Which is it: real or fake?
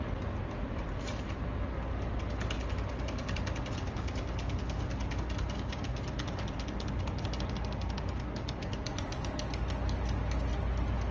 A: real